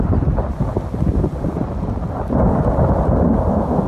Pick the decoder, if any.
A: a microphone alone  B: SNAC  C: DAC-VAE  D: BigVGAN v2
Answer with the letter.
A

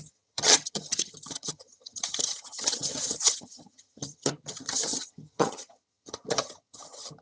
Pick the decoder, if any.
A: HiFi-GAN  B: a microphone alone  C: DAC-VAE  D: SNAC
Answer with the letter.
A